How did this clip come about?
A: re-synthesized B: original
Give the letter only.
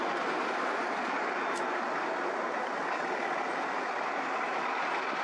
B